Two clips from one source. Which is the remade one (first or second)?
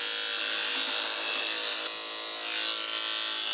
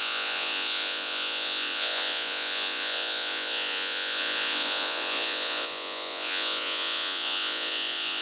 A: second